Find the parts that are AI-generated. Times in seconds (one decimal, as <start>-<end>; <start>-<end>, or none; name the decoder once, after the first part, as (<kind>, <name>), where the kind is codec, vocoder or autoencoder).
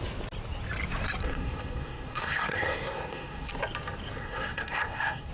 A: 1.2-3.5 (codec, SNAC); 4.2-5.3